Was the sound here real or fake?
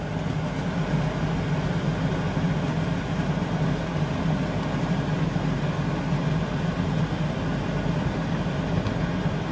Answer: real